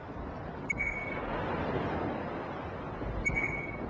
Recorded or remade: recorded